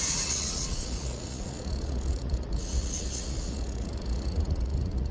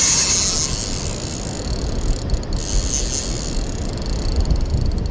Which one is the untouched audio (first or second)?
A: second